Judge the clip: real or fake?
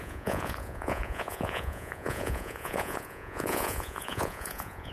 fake